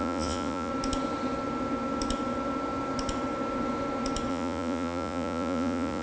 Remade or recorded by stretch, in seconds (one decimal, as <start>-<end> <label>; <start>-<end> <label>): 0.0-0.7 remade; 0.7-4.3 recorded; 4.3-6.0 remade